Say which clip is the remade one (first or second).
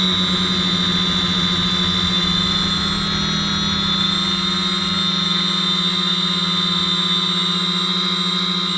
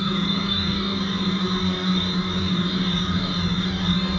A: second